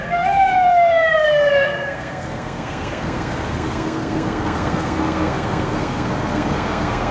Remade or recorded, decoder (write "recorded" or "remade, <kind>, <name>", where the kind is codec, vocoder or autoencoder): remade, codec, SNAC